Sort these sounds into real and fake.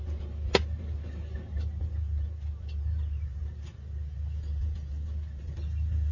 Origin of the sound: real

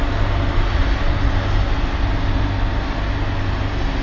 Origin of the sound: real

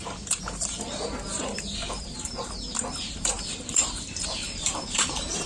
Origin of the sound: fake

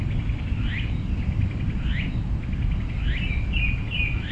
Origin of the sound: real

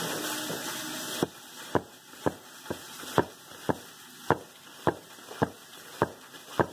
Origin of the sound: real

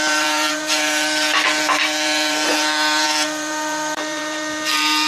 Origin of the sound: fake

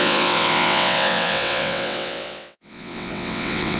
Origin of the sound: fake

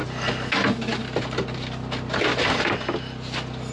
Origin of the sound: real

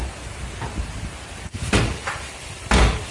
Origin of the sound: real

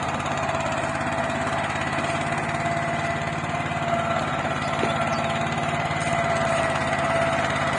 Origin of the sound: real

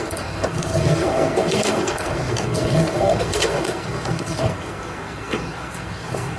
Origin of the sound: fake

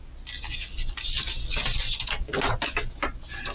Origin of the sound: real